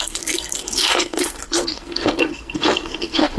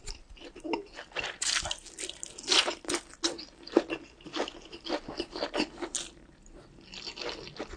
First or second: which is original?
second